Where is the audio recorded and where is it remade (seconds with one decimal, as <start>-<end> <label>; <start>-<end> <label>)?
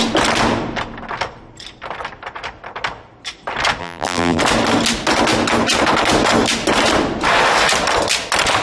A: 0.0-3.8 recorded; 3.8-4.4 remade; 4.4-8.6 recorded